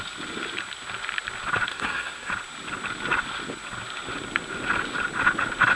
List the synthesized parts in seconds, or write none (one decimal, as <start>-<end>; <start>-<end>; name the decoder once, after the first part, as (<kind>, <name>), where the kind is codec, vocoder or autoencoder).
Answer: 1.7-2.3 (codec, SNAC)